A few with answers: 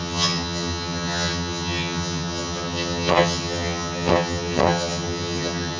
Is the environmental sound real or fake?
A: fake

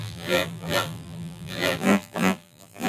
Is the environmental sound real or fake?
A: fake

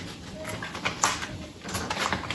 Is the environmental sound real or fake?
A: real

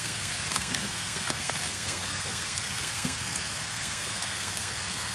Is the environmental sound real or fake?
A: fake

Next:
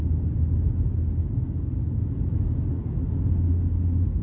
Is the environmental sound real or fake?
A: real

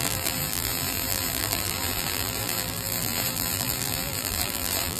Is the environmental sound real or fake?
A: fake